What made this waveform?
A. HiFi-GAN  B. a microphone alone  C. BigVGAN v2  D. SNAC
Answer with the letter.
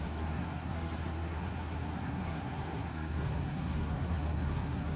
D